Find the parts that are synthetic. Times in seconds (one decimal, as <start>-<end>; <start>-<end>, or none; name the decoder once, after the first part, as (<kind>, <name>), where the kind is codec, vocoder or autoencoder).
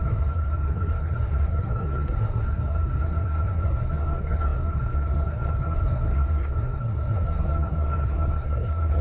0.0-9.0 (codec, SNAC)